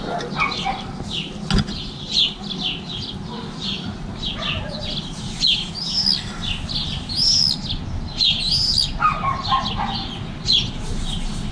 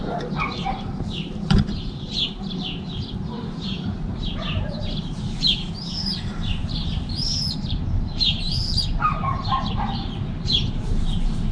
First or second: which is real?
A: first